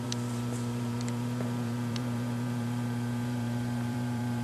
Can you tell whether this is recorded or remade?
remade